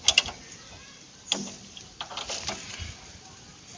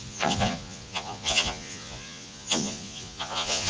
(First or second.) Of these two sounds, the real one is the first